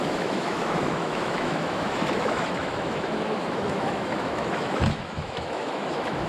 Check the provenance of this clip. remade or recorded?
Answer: remade